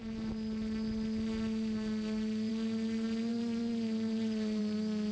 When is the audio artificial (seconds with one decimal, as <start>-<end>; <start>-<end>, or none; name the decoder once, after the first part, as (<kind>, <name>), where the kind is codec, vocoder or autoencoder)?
3.3-4.6 (vocoder, BigVGAN v2)